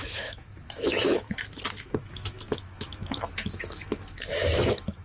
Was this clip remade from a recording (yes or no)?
yes